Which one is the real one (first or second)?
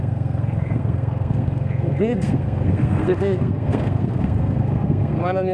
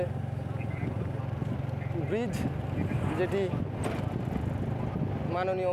second